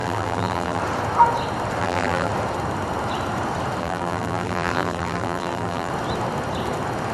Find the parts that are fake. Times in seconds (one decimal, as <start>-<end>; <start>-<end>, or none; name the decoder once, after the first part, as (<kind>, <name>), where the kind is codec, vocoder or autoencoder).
0.0-0.8 (vocoder, BigVGAN v2); 1.8-2.3; 3.8-5.9